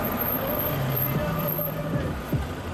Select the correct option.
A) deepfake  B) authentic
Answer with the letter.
A